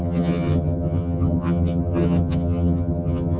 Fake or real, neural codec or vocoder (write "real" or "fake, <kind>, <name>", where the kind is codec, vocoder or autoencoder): fake, vocoder, HiFi-GAN